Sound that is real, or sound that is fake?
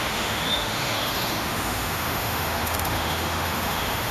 fake